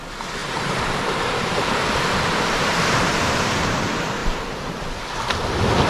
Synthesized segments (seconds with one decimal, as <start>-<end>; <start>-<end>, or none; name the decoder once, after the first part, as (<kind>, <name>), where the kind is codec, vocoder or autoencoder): 0.4-3.8 (vocoder, BigVGAN v2); 4.2-4.9